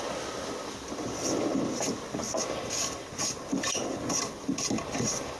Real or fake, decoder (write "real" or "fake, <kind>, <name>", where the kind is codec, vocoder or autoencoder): real